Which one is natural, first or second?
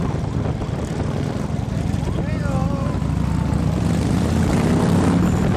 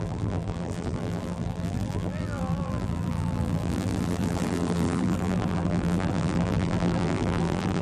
first